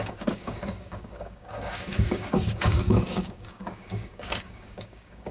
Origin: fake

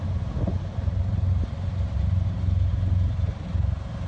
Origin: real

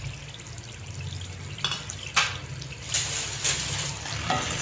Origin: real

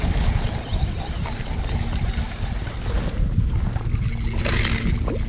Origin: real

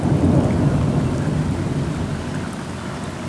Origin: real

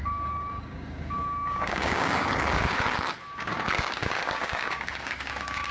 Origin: fake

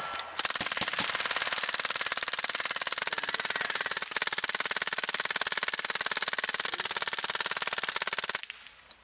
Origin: real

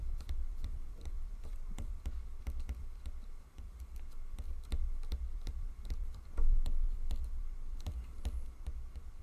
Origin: fake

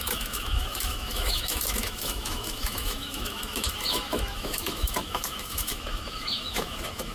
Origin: fake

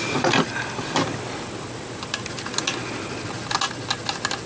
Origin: real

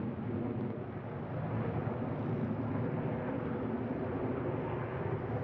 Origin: real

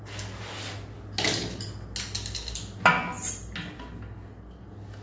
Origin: real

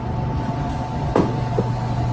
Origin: real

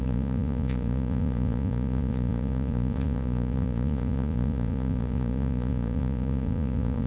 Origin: fake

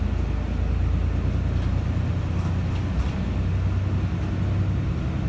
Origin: real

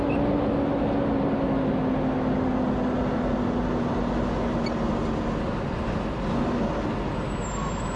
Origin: real